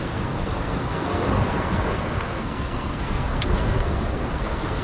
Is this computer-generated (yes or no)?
yes